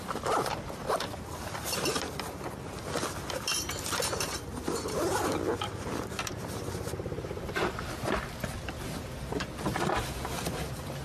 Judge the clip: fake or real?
fake